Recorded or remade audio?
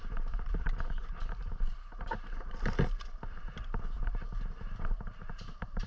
remade